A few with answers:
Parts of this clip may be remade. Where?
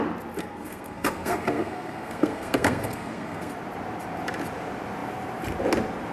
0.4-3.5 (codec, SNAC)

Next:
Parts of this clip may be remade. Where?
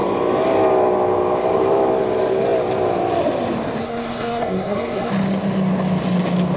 3.8-5.1 (codec, SNAC)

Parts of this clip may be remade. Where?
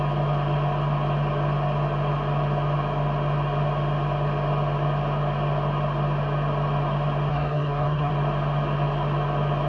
7.3-8.1 (codec, SNAC)